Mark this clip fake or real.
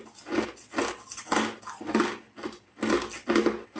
real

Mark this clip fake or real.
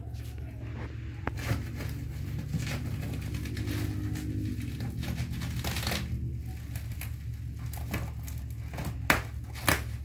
real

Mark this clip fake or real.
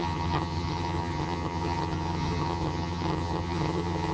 fake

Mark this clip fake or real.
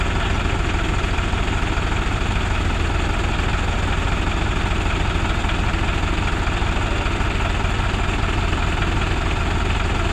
real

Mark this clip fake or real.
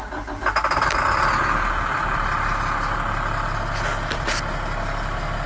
fake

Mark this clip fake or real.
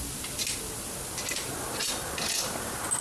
real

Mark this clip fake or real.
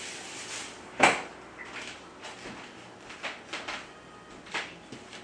real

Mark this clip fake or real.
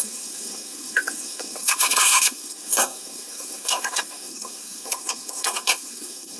fake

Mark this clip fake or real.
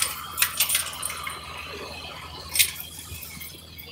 real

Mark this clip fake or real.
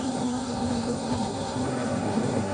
fake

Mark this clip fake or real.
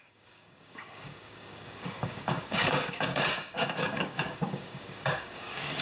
fake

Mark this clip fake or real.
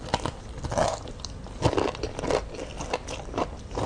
real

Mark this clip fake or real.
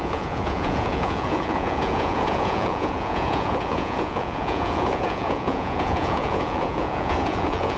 fake